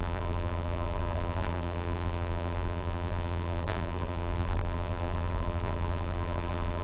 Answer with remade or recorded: remade